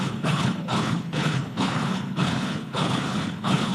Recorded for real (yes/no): no